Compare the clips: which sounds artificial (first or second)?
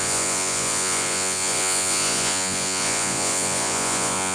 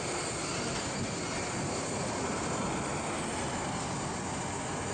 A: first